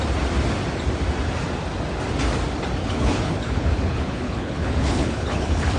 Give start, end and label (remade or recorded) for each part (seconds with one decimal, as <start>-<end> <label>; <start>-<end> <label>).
0.0-2.8 recorded; 2.8-5.8 remade